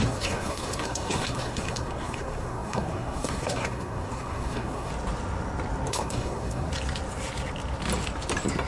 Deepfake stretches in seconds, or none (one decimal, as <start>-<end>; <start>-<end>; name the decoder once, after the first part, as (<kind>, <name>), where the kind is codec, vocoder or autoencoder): 0.0-4.9 (codec, SNAC); 5.9-6.7